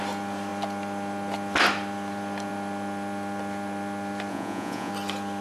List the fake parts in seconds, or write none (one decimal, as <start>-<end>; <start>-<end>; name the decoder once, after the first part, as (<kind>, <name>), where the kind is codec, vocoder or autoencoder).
4.3-4.9 (vocoder, Vocos)